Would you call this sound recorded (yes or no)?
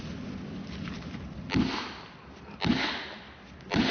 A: yes